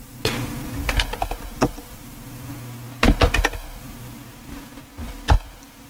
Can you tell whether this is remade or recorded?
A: recorded